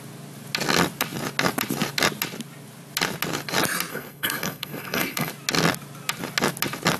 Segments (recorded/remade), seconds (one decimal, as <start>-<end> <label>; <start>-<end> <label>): 0.0-3.9 recorded; 3.9-5.3 remade; 5.3-7.0 recorded